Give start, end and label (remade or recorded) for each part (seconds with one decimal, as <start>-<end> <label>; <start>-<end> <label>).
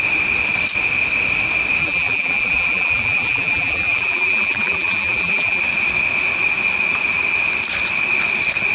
0.0-1.8 recorded; 1.8-5.6 remade; 5.6-8.7 recorded